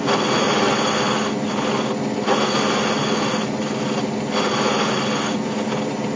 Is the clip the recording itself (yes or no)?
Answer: yes